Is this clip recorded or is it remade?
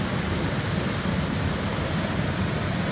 recorded